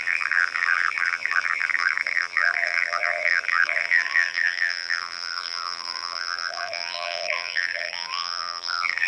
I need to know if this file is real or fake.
fake